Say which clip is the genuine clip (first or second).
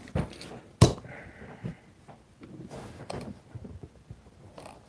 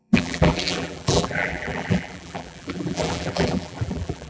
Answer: first